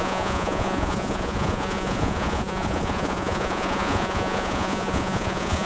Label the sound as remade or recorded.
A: remade